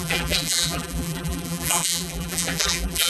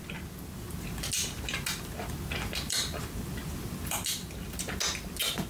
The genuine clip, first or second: second